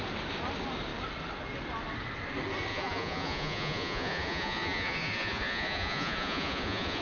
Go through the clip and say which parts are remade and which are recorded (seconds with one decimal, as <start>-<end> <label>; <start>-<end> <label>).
0.0-2.7 recorded; 2.7-7.0 remade